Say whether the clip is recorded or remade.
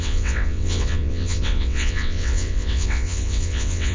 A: remade